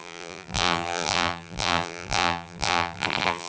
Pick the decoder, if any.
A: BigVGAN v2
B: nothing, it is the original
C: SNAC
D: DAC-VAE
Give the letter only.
A